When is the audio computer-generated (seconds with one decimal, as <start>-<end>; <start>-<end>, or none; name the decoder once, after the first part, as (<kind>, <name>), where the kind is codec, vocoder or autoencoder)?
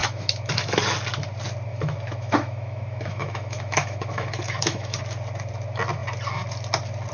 0.0-0.8 (autoencoder, DAC-VAE); 1.7-5.0